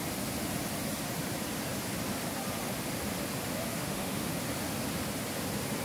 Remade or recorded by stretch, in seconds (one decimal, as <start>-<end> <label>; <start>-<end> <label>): 0.0-3.7 recorded; 3.7-4.3 remade; 4.3-5.8 recorded